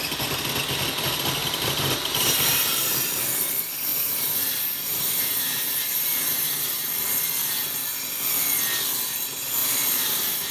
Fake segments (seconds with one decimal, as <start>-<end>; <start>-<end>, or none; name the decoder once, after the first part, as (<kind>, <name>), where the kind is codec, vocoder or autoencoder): 1.4-3.2 (vocoder, BigVGAN v2); 3.9-6.9; 9.6-10.5